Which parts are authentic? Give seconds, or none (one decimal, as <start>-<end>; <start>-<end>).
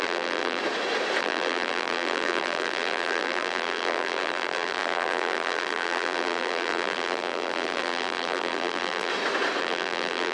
0.6-1.2; 9.1-9.6